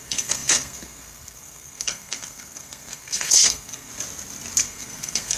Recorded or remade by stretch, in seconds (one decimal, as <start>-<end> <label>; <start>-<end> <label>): 0.0-3.9 remade; 3.9-4.6 recorded; 4.6-5.4 remade